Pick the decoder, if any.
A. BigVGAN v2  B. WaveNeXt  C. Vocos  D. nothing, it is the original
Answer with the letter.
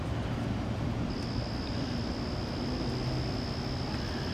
D